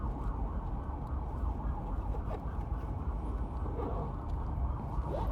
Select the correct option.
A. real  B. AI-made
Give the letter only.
A